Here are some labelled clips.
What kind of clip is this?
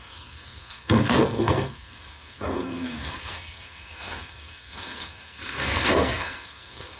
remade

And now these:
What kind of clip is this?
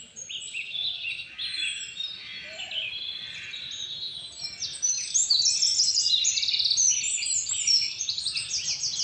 recorded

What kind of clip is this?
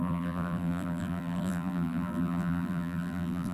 remade